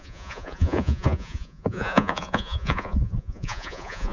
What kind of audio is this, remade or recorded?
remade